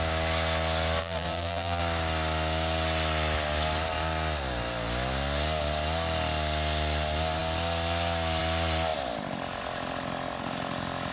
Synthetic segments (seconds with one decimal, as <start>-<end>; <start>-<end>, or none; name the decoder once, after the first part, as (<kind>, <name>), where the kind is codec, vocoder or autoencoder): 1.0-1.8 (vocoder, BigVGAN v2)